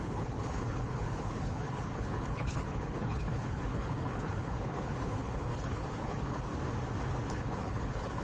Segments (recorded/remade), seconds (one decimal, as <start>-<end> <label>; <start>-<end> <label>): 0.0-6.5 remade; 6.5-7.3 recorded; 7.3-8.2 remade